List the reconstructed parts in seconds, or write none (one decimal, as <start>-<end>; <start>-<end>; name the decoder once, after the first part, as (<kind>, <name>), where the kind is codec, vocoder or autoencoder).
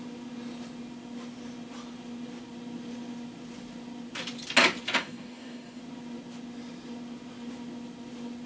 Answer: 5.0-5.8 (codec, DAC)